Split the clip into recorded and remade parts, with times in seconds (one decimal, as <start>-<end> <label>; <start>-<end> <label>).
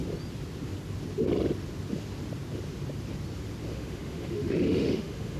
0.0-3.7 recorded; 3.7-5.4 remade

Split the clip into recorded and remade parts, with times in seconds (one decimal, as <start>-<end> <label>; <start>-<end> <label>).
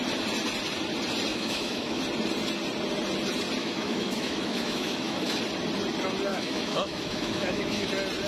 0.0-1.3 recorded; 1.3-2.0 remade; 2.0-3.6 recorded; 3.6-5.4 remade; 5.4-6.3 recorded; 6.3-7.9 remade; 7.9-8.3 recorded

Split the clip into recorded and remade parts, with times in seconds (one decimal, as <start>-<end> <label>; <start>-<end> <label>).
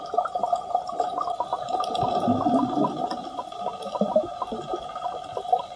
0.0-0.4 recorded; 0.4-1.1 remade; 1.1-5.8 recorded